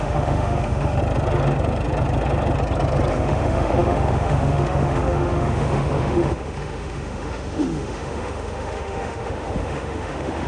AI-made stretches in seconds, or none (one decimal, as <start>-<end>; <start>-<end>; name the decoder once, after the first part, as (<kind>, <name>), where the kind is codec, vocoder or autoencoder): 0.0-1.0 (autoencoder, DAC-VAE); 3.1-10.5